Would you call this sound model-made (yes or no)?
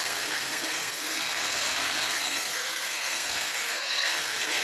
yes